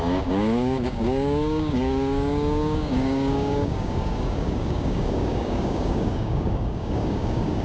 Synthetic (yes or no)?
yes